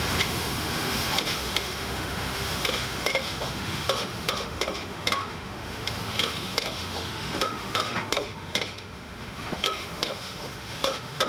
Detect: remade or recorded remade